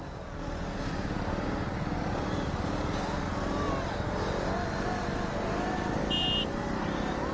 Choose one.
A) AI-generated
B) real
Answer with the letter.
B